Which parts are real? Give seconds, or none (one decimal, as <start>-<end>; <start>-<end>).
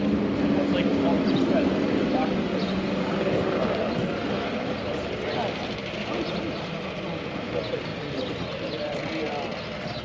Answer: 0.0-10.0